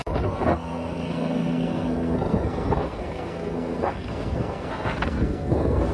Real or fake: fake